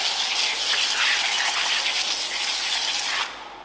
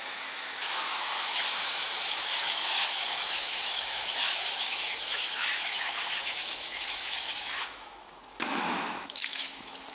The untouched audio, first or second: first